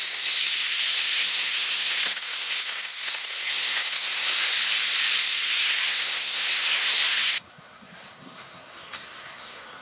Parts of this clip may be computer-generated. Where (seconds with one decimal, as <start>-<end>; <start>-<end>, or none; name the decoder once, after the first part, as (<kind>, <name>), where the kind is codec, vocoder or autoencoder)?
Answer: 0.0-4.6 (codec, SNAC); 5.2-9.8